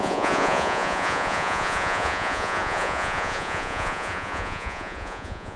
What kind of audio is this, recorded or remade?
remade